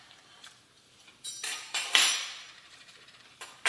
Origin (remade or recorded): remade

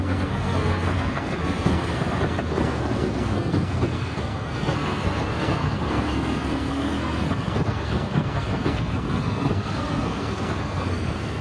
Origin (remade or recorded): remade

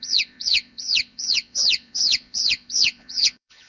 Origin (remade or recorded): remade